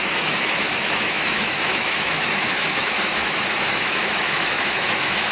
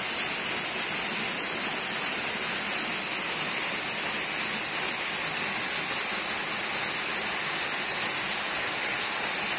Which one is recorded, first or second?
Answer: second